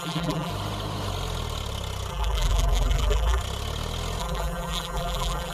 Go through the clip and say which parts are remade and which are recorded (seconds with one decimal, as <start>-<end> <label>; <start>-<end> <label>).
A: 0.0-0.5 remade; 0.5-2.1 recorded; 2.1-3.4 remade; 3.4-4.2 recorded; 4.2-5.5 remade